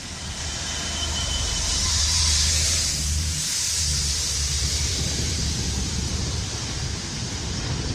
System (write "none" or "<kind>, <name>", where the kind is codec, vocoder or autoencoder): vocoder, BigVGAN v2